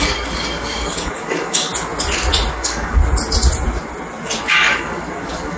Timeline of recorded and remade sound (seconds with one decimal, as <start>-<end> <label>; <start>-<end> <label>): 0.0-1.7 remade; 1.7-2.5 recorded; 2.5-3.0 remade; 3.0-4.4 recorded; 4.4-5.6 remade